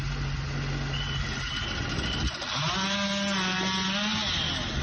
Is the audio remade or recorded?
recorded